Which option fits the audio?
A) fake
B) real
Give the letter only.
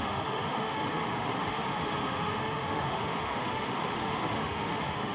A